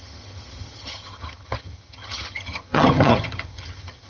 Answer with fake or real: fake